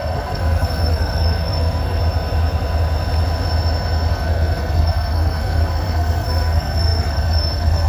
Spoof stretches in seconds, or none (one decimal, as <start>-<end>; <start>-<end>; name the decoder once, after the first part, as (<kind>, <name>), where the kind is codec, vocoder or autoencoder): 0.0-2.0 (codec, SNAC); 4.1-7.9